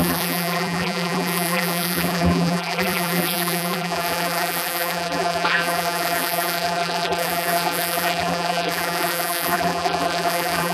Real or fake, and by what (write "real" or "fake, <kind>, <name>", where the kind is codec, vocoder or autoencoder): fake, vocoder, BigVGAN v2